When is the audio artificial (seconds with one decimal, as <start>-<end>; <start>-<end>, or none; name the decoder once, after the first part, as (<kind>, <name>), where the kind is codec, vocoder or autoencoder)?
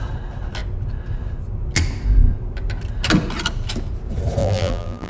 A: 4.4-5.1 (vocoder, BigVGAN v2)